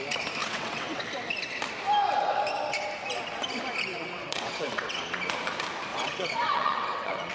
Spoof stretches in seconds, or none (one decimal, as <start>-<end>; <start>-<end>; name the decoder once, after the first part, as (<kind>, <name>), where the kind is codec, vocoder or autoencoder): 0.4-1.0 (vocoder, WaveNeXt); 3.9-5.0; 5.9-7.3